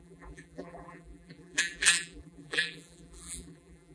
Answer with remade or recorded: remade